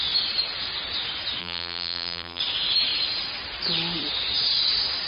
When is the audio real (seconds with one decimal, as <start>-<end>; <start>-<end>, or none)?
0.0-1.4; 2.4-5.1

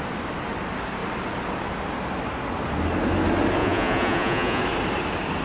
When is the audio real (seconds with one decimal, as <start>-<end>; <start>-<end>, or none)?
0.0-3.6; 4.6-5.4